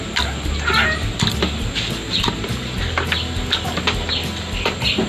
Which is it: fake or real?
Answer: real